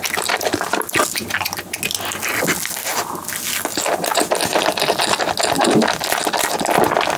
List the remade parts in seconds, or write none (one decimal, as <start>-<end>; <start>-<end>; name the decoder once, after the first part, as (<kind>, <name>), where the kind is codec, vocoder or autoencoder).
none